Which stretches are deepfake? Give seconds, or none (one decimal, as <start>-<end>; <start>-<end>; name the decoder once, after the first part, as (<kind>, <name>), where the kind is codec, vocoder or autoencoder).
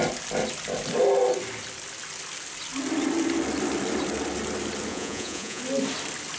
4.9-5.6 (vocoder, Vocos)